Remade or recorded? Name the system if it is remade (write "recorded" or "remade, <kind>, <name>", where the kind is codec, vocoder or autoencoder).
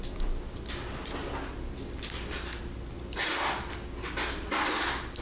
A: recorded